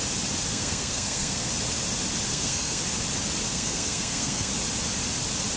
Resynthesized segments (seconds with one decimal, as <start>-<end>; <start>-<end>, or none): 0.5-1.5; 2.3-2.8; 3.5-4.5